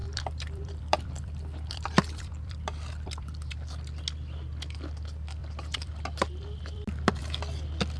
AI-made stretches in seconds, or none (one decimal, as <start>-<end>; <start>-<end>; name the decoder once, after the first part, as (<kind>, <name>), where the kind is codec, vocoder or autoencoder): 0.0-3.5 (vocoder, BigVGAN v2); 5.4-7.2